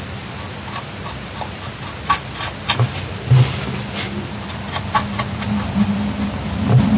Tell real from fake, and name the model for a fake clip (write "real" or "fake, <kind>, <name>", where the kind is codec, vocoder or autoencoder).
real